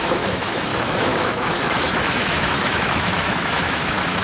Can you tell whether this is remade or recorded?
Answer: remade